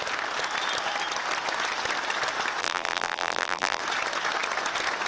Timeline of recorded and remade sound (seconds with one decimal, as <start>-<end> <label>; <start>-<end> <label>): 0.0-2.6 recorded; 2.6-3.8 remade; 3.8-5.1 recorded